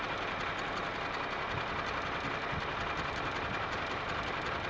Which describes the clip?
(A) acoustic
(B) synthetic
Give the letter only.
A